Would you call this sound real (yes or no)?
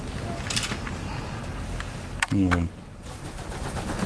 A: yes